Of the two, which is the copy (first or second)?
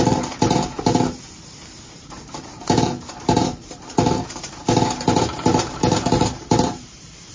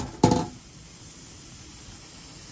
first